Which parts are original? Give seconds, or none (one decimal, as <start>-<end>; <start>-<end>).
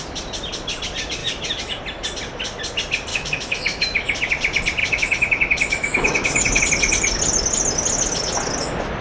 0.0-1.2; 1.8-3.1; 4.3-4.8; 6.6-9.0